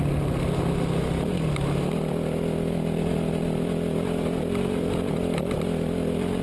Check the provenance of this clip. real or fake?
real